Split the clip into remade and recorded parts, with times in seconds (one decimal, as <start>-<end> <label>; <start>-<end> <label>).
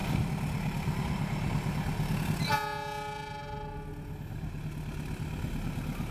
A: 0.0-6.1 recorded